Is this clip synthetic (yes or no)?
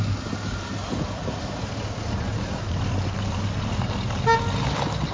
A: no